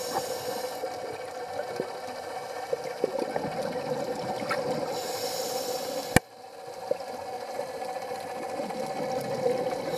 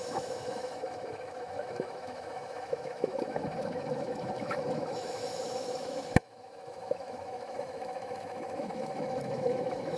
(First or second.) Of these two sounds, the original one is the first